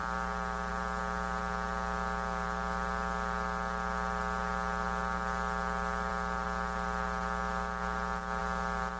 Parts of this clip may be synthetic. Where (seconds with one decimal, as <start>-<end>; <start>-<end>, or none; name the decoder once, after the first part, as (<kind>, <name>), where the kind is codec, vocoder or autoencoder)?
none